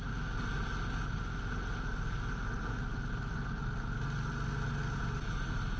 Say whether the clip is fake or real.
real